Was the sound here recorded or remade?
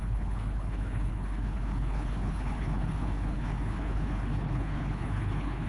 remade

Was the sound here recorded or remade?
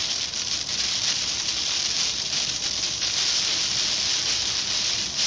remade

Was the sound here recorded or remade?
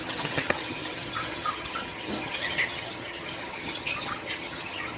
remade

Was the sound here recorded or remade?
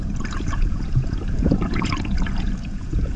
remade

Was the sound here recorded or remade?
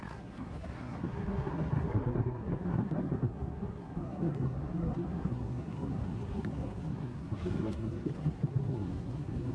remade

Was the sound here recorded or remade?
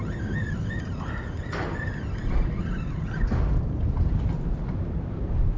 recorded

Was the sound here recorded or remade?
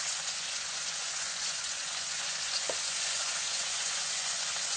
remade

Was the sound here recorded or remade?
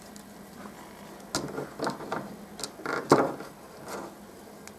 recorded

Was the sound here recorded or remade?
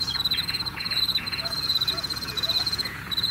remade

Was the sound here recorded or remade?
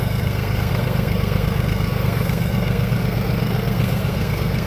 remade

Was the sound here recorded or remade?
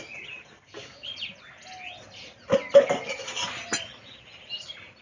recorded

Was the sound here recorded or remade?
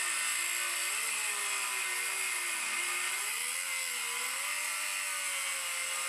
recorded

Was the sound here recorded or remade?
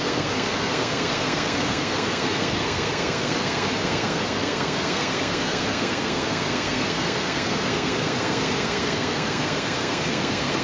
remade